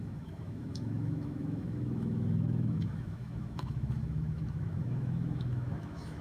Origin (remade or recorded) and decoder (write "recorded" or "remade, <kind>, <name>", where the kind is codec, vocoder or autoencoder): remade, autoencoder, DAC-VAE